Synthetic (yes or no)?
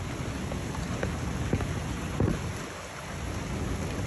no